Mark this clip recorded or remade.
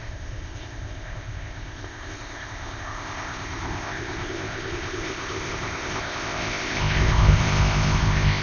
remade